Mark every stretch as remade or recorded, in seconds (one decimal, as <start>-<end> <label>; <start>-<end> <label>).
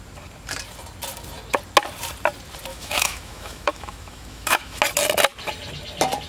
0.0-2.7 recorded; 2.7-4.8 remade; 4.8-6.3 recorded